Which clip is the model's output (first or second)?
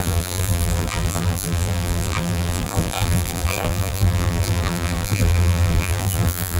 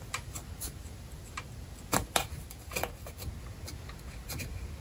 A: first